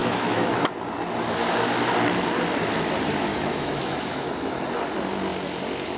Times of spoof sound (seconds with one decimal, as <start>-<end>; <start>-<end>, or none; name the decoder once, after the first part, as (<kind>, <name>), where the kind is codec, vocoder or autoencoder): 0.0-0.7 (autoencoder, DAC-VAE); 3.3-4.5